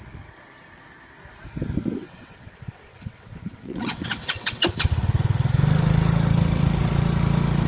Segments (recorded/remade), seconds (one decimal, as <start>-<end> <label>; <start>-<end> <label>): 0.0-2.0 recorded; 2.0-4.6 remade; 4.6-7.7 recorded